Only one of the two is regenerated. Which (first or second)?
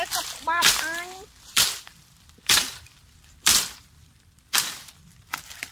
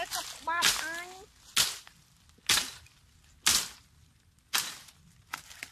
first